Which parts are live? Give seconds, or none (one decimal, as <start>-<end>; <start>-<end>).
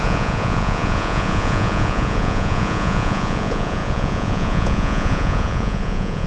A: none